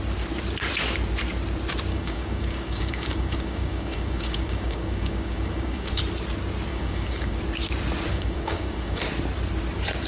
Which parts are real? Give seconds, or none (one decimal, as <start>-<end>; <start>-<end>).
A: 0.0-1.9; 6.0-6.7; 7.4-8.1; 9.0-10.1

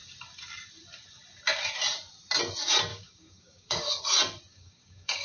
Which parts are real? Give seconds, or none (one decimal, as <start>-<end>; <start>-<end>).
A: 0.0-2.9; 4.0-4.5

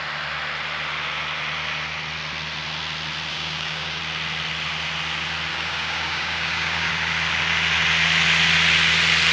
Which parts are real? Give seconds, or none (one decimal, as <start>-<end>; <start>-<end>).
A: 0.0-3.3; 4.0-5.5; 6.9-9.3